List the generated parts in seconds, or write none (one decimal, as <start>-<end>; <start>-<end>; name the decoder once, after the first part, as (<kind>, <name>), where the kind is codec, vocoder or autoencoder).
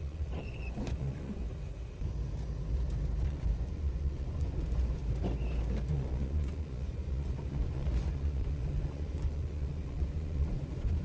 0.0-1.4 (vocoder, Vocos); 3.3-5.0; 5.9-11.0